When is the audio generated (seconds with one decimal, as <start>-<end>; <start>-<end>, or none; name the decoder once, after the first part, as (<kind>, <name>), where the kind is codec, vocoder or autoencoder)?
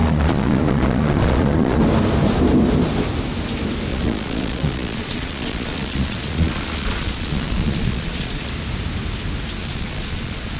0.0-1.8 (vocoder, Vocos); 3.9-8.5; 9.6-10.6